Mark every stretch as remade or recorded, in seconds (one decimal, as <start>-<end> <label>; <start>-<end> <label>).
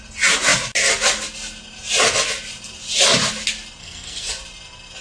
0.0-3.8 recorded; 3.8-4.3 remade; 4.3-5.0 recorded